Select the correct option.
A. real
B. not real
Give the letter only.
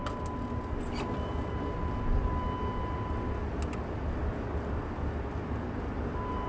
A